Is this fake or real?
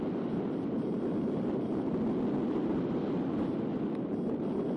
real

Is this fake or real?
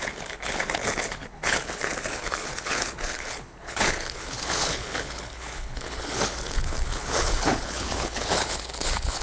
fake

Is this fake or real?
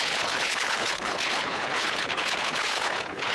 fake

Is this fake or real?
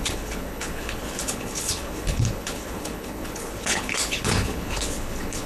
fake